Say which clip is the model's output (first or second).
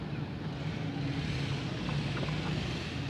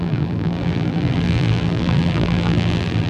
second